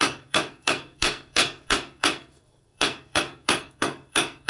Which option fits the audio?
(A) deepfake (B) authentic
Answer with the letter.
A